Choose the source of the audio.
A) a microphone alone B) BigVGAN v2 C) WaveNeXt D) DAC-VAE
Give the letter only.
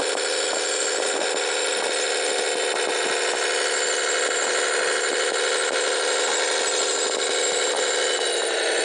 A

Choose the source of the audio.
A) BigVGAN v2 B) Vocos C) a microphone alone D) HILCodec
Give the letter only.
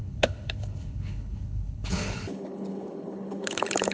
D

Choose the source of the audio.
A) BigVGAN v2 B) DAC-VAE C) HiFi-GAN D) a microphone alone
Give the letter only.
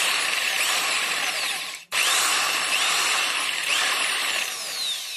A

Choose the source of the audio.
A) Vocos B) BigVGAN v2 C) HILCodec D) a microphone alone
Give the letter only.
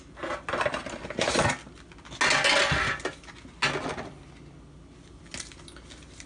D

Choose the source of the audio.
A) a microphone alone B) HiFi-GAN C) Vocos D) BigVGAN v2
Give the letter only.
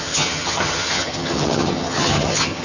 B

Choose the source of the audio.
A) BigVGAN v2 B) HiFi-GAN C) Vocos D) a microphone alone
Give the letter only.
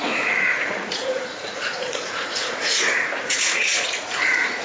C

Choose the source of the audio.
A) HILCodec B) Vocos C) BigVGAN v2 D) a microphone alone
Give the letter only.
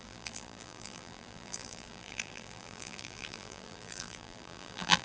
C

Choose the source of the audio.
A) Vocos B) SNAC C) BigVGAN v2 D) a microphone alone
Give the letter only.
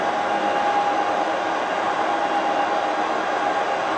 D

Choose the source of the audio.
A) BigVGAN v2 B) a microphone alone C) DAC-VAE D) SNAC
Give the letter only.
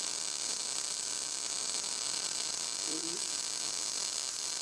A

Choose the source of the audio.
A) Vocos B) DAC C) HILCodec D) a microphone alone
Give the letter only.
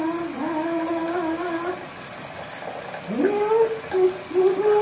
D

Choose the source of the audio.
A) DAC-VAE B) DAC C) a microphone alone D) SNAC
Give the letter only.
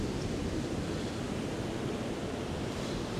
C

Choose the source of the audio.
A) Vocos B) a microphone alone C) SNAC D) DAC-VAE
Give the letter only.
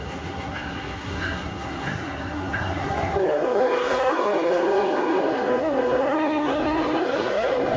C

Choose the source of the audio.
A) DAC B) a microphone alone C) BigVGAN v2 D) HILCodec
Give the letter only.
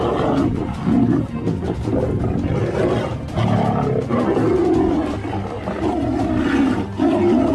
B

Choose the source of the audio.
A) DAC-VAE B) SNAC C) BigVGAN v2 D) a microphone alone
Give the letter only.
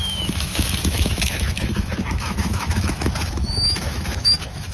A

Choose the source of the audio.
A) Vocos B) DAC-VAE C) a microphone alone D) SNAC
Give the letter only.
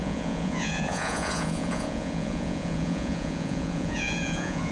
A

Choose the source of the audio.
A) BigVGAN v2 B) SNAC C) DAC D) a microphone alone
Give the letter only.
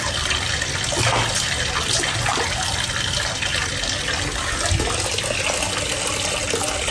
D